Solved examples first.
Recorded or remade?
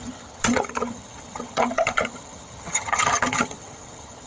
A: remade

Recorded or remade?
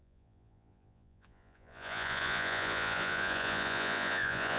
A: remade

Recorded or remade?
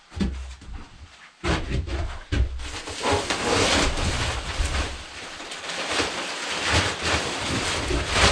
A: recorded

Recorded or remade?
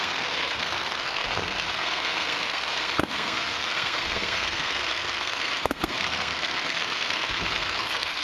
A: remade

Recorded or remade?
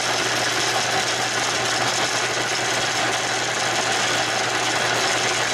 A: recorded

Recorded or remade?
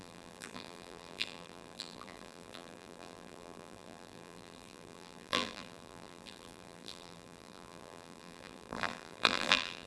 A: remade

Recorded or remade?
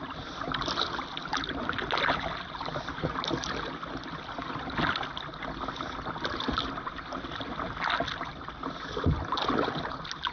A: recorded